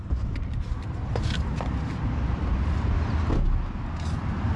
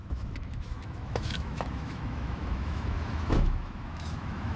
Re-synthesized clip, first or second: second